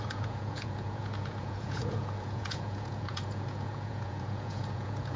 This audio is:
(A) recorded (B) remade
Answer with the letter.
B